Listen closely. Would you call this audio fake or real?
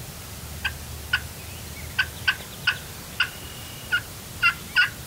real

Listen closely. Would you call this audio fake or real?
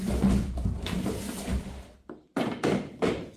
real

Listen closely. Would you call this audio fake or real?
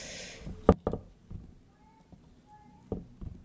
real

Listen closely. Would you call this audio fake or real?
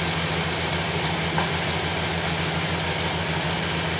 real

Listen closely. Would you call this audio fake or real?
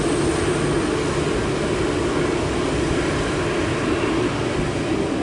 real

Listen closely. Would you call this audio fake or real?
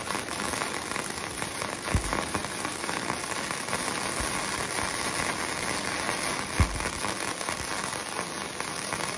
real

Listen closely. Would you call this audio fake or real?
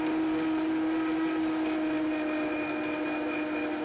real